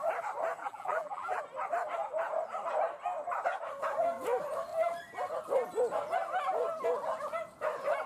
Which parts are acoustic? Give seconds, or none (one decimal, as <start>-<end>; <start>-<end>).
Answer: 0.0-0.6; 1.4-8.1